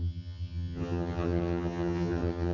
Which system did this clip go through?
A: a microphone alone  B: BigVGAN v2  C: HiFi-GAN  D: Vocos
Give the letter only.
C